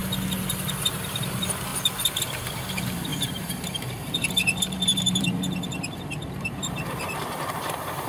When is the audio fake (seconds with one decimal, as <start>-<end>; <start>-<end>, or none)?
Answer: 0.9-1.7; 2.2-8.1